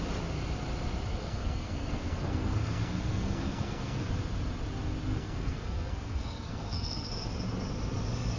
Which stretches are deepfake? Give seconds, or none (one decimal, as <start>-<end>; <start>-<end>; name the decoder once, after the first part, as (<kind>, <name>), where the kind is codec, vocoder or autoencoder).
1.2-4.1 (codec, SNAC); 5.1-7.1

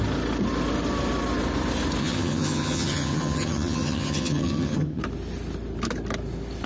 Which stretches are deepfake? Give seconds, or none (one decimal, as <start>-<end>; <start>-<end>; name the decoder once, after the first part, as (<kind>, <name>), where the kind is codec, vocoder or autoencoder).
2.0-5.0 (vocoder, HiFi-GAN)

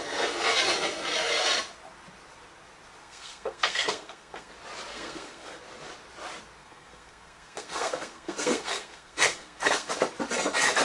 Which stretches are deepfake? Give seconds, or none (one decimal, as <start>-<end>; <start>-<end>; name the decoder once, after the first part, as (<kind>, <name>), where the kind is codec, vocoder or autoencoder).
3.0-4.5 (codec, SNAC); 4.9-5.6; 6.6-9.9

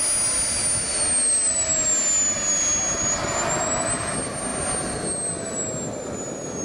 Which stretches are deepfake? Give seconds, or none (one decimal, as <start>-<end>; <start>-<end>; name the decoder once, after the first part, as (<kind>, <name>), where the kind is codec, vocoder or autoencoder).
none